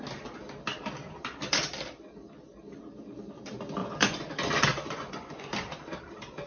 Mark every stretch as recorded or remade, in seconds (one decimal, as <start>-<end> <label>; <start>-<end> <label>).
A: 0.0-3.8 recorded; 3.8-4.3 remade; 4.3-4.7 recorded; 4.7-5.5 remade; 5.5-6.5 recorded